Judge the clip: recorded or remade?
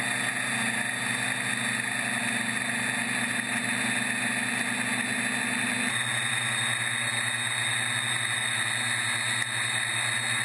recorded